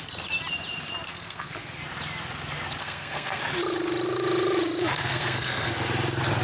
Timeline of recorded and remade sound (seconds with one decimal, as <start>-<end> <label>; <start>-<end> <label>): 0.0-1.1 recorded; 1.1-1.8 remade; 1.8-2.8 recorded; 2.8-3.4 remade; 3.4-5.1 recorded; 5.1-5.7 remade; 5.7-6.4 recorded

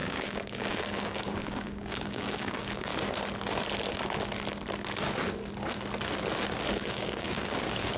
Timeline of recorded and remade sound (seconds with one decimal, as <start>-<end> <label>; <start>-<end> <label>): 0.0-2.9 remade; 2.9-6.7 recorded; 6.7-8.0 remade